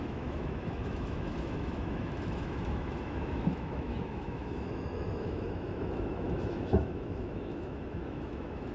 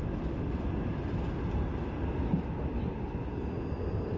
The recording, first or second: second